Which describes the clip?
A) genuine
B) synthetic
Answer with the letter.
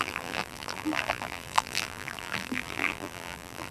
B